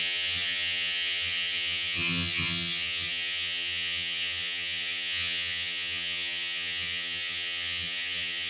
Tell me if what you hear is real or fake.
fake